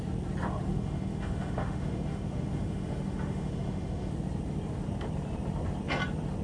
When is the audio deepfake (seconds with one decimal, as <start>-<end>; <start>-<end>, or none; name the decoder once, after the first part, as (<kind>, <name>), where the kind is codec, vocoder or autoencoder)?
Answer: 0.7-4.1 (autoencoder, DAC-VAE)